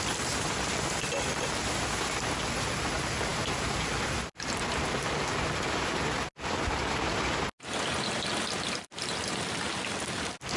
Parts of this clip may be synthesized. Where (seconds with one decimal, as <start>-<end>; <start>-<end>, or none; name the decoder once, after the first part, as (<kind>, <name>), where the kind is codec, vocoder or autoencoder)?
none